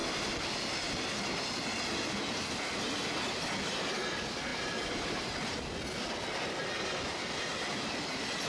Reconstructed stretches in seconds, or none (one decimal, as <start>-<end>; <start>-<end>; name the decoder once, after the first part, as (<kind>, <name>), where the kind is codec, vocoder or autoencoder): none